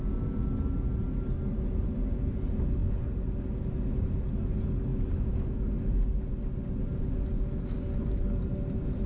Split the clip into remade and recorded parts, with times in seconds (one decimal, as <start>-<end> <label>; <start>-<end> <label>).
0.0-9.1 recorded